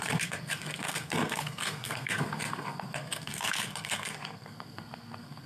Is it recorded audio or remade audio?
remade